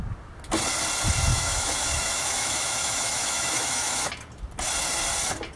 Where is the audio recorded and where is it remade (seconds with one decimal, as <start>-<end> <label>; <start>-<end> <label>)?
0.0-1.3 recorded; 1.3-4.1 remade; 4.1-5.6 recorded

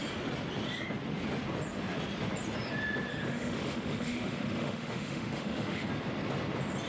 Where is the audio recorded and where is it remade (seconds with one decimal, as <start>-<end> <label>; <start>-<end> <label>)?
0.0-3.1 recorded; 3.1-5.9 remade; 5.9-6.9 recorded